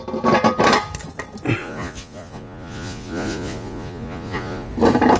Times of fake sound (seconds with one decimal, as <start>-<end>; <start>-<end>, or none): 1.6-4.7